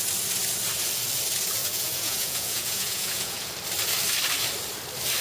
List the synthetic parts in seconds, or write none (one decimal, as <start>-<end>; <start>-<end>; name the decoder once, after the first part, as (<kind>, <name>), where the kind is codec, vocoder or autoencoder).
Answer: 1.6-3.5 (vocoder, Vocos)